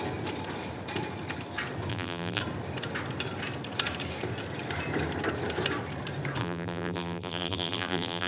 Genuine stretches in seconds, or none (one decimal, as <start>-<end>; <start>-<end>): 0.0-1.9; 2.4-6.4